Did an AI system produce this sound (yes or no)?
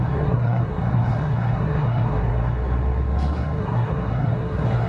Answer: yes